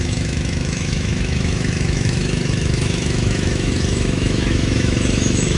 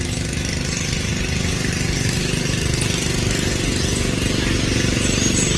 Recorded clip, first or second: second